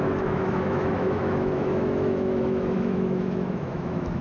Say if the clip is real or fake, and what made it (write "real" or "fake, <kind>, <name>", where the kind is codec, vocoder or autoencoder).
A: fake, autoencoder, DAC-VAE